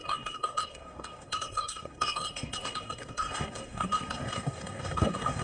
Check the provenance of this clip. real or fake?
fake